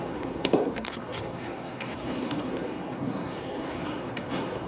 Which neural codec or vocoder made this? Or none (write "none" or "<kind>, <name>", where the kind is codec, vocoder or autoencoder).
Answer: codec, SNAC